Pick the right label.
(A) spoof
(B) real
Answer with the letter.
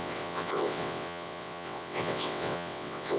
A